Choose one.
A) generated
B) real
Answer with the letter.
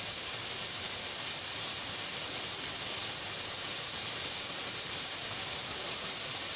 B